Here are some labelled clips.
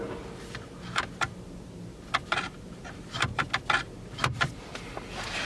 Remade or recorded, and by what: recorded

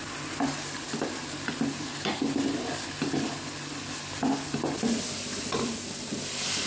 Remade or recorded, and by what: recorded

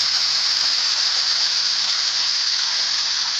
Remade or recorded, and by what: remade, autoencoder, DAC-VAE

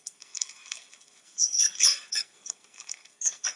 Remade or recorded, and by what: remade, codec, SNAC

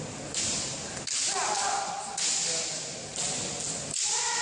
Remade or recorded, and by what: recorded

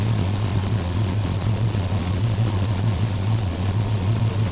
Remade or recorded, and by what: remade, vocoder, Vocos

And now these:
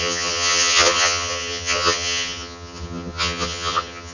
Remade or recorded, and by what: remade, vocoder, HiFi-GAN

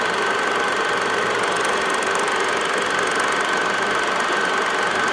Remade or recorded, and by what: recorded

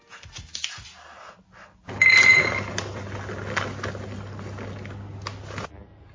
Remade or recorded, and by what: recorded